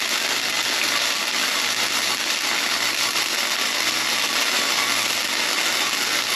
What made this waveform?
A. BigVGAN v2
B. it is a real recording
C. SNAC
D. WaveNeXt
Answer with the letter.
B